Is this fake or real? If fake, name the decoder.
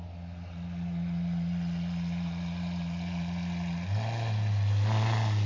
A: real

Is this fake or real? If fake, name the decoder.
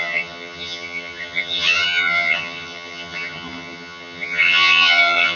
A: fake, vocoder, HiFi-GAN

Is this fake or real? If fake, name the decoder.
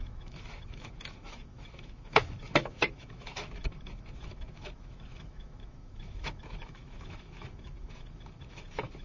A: fake, autoencoder, DAC-VAE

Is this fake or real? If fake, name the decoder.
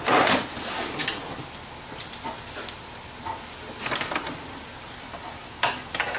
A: real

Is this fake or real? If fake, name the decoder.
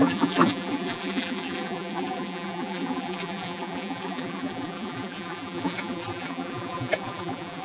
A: fake, vocoder, BigVGAN v2